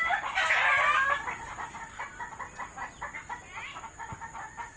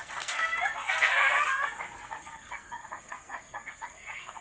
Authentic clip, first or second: first